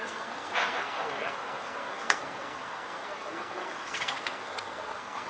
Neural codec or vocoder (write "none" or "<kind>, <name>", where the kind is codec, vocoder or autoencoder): codec, SNAC